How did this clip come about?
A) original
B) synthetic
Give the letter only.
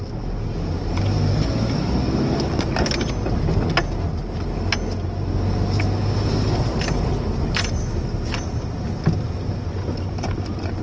A